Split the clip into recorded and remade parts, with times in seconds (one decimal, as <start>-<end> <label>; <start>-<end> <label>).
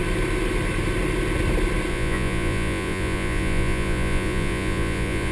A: 0.0-1.9 recorded; 1.9-5.3 remade